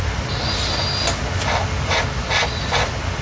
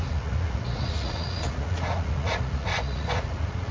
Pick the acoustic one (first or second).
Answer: first